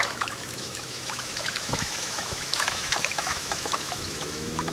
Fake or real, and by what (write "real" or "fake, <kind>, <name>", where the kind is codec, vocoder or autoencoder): fake, autoencoder, DAC-VAE